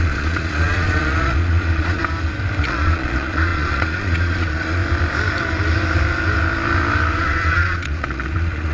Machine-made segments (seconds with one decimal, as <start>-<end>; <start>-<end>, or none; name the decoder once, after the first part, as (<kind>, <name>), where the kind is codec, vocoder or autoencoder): 0.0-2.0 (vocoder, Vocos); 2.6-4.8; 7.2-8.7